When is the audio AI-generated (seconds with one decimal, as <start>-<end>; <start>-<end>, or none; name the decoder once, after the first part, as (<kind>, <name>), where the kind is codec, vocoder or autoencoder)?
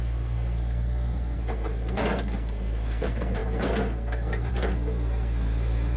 0.0-6.0 (codec, SNAC)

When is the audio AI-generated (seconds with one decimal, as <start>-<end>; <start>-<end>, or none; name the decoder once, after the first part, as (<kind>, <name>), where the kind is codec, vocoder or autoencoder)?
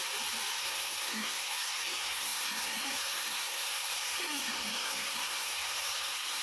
0.6-6.4 (codec, SNAC)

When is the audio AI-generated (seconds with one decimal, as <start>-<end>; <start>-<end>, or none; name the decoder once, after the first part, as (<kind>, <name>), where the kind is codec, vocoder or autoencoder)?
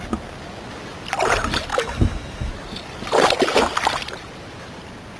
1.7-2.5 (autoencoder, DAC-VAE)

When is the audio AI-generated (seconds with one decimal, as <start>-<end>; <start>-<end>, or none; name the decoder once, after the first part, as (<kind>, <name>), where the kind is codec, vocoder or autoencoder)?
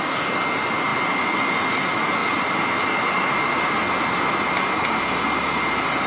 none